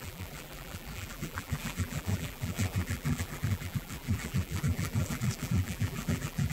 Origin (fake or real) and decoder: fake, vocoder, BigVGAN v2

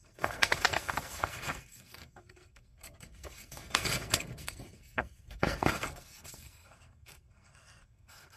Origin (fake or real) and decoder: fake, codec, SNAC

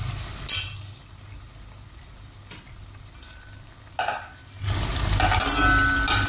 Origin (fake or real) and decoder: real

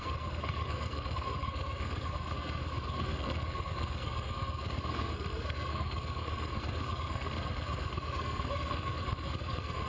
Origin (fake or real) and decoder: fake, codec, SNAC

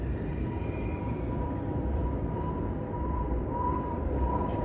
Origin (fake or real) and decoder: fake, vocoder, BigVGAN v2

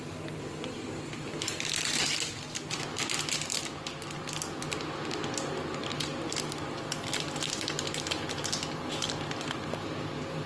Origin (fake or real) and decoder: real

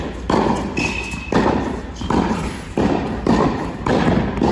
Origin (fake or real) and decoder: real